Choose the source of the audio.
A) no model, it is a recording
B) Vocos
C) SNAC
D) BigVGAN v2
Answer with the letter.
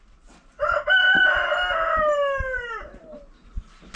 A